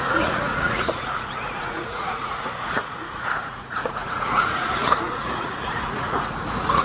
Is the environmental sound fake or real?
fake